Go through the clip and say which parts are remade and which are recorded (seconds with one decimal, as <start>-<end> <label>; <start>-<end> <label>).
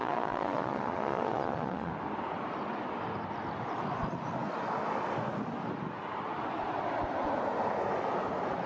0.0-1.9 remade; 1.9-8.7 recorded